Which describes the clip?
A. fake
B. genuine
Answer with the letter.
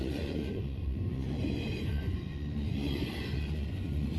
A